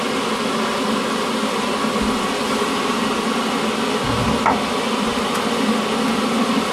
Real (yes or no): yes